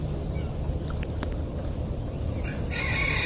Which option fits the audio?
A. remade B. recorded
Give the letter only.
B